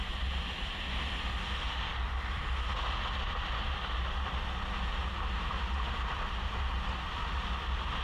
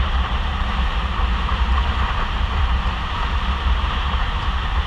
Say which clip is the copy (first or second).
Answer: second